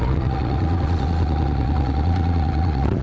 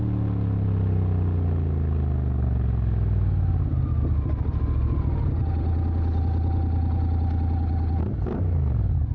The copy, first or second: first